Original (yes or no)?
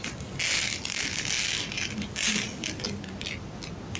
yes